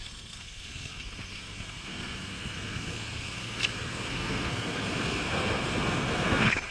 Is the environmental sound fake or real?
fake